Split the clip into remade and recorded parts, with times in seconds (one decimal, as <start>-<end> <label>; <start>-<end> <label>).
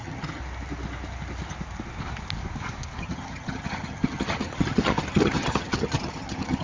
0.0-0.4 remade; 0.4-3.0 recorded; 3.0-6.6 remade